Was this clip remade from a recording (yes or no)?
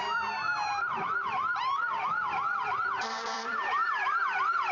yes